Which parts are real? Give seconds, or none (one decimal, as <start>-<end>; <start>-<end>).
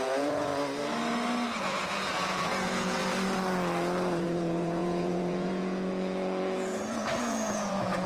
0.5-1.6; 3.0-4.2